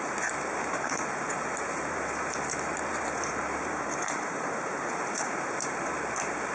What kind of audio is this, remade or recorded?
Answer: remade